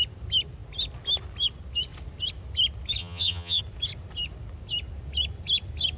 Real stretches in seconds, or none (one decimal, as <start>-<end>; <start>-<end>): 0.0-3.0; 3.6-6.0